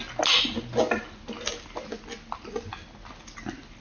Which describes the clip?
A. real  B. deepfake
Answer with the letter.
A